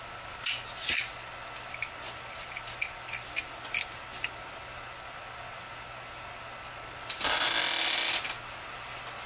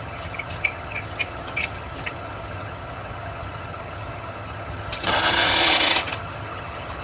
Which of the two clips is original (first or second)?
first